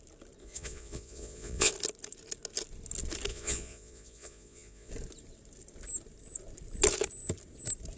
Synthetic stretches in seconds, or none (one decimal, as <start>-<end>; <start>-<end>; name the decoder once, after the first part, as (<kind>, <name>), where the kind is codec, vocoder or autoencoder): 0.4-1.7 (vocoder, Vocos); 3.3-4.9